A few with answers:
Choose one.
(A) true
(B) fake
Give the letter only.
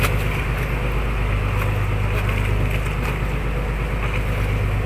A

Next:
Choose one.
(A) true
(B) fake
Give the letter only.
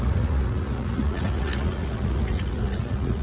B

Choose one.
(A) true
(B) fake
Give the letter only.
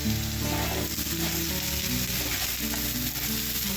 A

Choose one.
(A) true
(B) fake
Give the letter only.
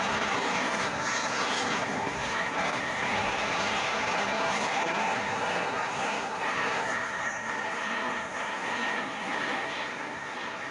B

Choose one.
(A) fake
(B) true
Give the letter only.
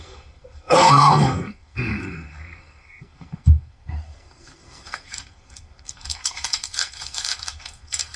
A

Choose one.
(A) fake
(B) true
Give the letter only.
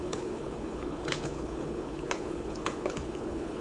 A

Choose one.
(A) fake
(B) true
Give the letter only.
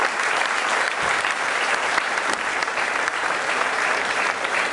A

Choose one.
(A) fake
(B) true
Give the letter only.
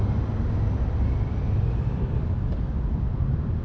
B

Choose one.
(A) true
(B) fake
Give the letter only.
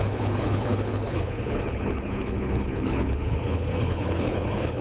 B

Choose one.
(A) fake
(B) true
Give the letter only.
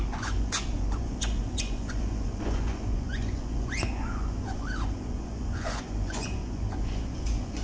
A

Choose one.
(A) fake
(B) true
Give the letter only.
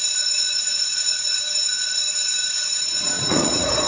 A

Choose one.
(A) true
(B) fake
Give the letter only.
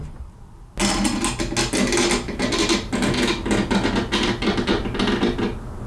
A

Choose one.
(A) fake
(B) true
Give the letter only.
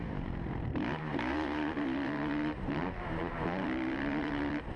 A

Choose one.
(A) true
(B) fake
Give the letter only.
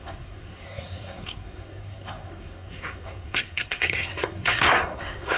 B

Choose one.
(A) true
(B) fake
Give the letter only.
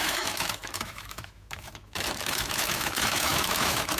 B